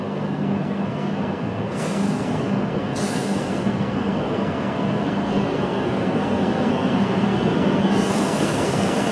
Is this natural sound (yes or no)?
no